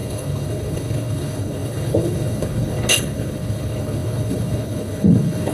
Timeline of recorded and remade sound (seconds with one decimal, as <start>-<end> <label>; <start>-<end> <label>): 0.0-5.5 remade